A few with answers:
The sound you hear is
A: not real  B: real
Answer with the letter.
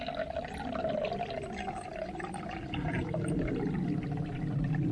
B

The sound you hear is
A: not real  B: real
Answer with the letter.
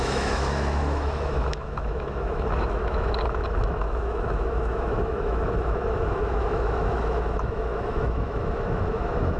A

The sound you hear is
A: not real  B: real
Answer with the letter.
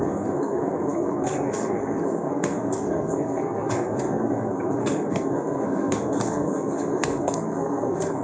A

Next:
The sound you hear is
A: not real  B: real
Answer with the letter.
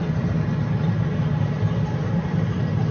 B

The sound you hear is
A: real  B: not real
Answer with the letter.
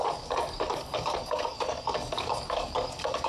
B